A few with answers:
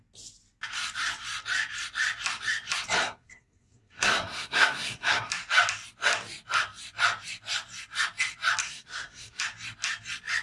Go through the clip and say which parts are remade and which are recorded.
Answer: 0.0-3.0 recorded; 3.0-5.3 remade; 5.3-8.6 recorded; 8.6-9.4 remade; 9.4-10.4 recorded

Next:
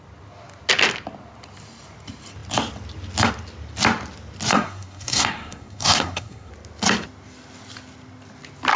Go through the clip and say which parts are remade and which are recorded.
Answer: 0.0-4.5 recorded; 4.5-6.5 remade; 6.5-8.8 recorded

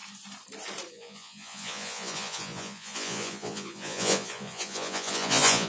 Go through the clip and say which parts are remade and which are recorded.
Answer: 0.0-0.9 recorded; 0.9-5.7 remade

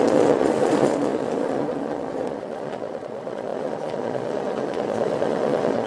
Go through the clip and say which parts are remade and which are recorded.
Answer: 0.0-5.9 remade

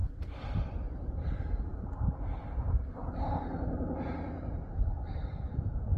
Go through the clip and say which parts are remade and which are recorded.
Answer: 0.0-0.9 remade; 0.9-6.0 recorded